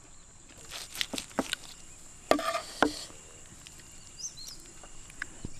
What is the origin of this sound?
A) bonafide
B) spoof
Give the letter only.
A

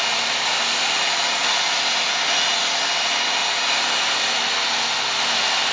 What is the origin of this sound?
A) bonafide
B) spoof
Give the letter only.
A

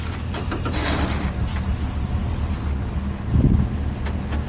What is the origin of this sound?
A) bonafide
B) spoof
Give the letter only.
A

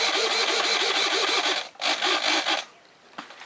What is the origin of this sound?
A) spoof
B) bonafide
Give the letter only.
B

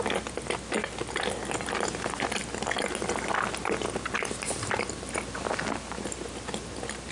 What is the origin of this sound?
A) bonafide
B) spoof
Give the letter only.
A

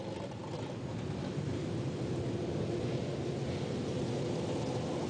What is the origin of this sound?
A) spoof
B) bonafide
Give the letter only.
B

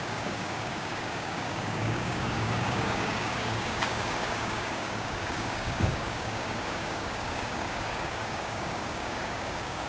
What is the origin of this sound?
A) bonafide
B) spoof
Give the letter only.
B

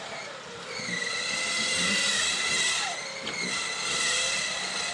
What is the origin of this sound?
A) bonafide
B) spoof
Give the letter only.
A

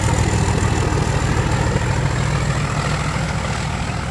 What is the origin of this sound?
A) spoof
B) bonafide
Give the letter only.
B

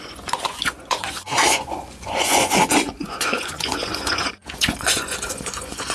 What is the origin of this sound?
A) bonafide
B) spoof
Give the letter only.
B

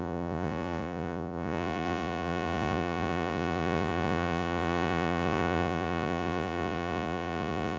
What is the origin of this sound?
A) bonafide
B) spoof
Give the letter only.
B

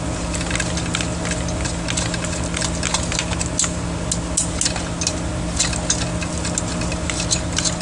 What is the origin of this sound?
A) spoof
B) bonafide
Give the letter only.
B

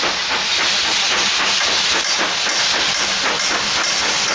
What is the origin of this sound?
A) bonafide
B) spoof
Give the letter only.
A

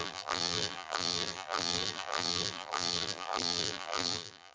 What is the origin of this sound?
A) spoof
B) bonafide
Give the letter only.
A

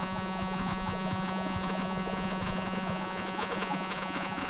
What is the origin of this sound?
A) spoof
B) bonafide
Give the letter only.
A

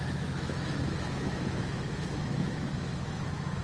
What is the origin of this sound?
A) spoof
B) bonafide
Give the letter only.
A